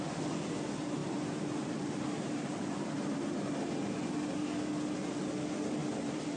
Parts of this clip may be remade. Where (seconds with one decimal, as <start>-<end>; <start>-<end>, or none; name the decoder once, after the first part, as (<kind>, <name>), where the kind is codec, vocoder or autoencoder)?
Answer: 1.0-3.5 (vocoder, BigVGAN v2); 5.8-6.4